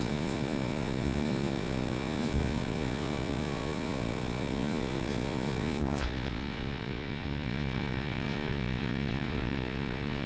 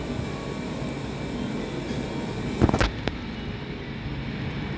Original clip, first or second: second